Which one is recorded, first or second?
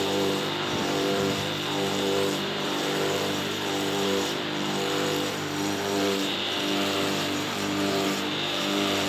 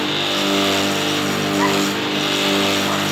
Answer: second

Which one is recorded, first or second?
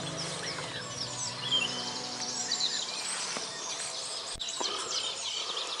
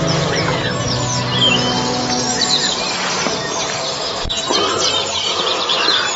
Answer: second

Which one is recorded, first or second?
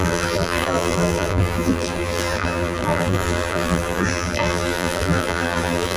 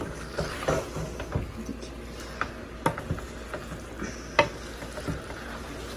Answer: second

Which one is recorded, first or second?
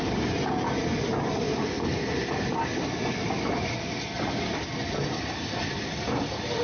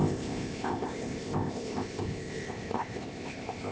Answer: first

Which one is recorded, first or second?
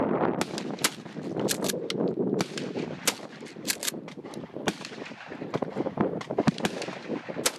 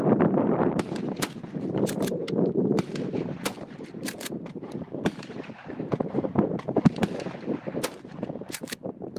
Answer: first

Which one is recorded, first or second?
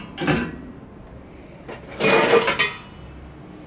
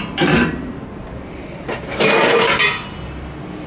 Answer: first